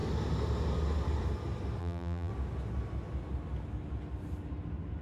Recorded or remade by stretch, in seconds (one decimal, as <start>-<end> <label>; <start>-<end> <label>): 0.0-1.8 recorded; 1.8-2.3 remade; 2.3-5.0 recorded